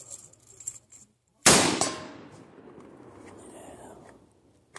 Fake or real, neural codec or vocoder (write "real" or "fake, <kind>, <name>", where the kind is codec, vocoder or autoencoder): fake, vocoder, BigVGAN v2